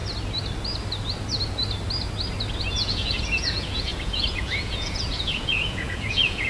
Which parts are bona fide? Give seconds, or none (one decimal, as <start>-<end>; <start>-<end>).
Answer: 0.0-2.7